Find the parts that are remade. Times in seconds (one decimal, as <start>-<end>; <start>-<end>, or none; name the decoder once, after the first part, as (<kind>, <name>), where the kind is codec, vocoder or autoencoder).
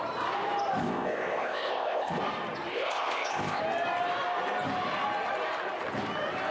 0.8-2.2 (codec, ZipCodec); 2.7-3.6